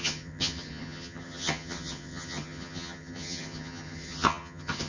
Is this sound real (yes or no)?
no